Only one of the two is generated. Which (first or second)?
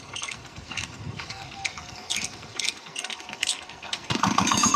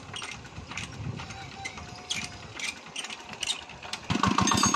first